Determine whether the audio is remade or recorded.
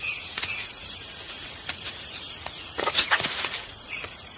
remade